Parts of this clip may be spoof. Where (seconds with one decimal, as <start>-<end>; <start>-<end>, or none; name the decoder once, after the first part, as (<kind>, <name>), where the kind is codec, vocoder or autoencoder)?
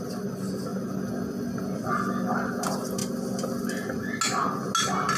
none